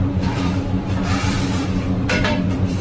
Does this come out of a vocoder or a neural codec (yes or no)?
yes